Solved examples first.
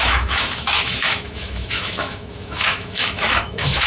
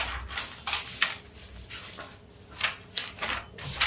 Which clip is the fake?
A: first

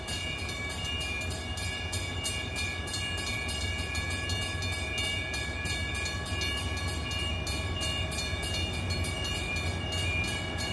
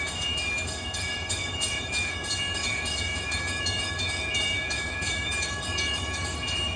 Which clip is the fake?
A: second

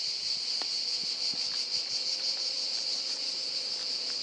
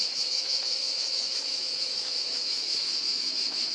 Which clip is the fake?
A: second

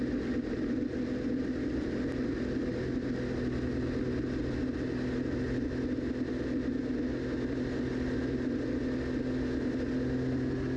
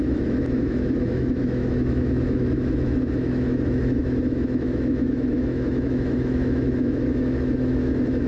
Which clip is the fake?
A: second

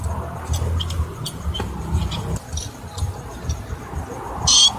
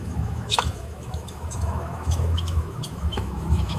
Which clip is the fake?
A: second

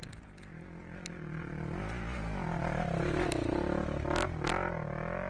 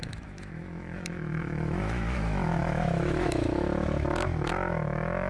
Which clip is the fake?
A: second